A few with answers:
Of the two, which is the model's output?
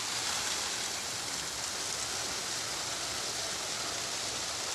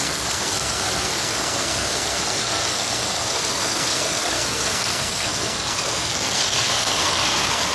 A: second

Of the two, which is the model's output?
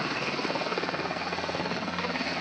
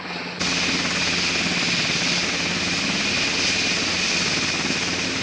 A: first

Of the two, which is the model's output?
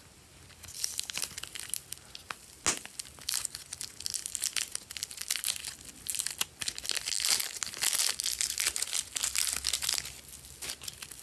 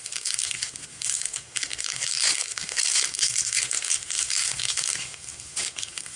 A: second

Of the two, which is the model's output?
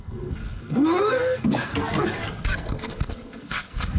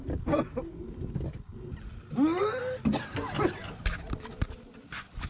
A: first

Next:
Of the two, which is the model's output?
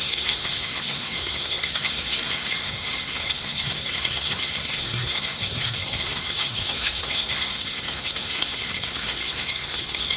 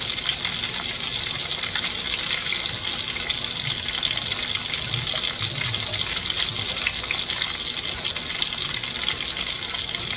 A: first